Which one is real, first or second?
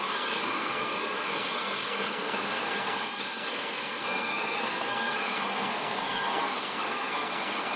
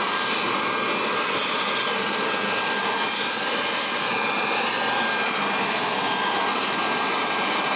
second